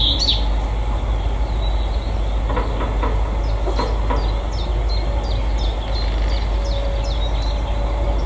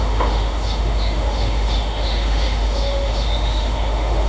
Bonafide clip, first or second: first